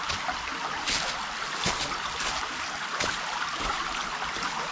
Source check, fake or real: real